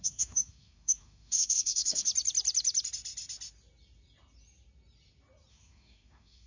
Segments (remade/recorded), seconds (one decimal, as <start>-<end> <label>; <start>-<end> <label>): 0.0-2.1 remade; 2.1-5.5 recorded; 5.5-6.5 remade